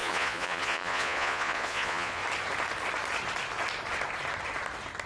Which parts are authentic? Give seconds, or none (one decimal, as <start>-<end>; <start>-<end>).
2.2-5.1